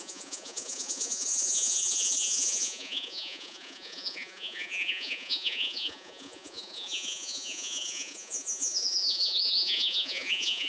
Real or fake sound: fake